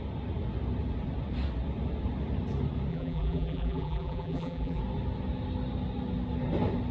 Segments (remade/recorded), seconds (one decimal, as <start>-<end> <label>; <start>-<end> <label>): 0.0-2.9 recorded; 2.9-4.8 remade; 4.8-6.9 recorded